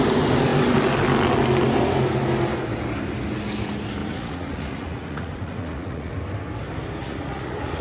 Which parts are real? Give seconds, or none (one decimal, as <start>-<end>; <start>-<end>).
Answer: 0.0-4.0; 6.1-7.0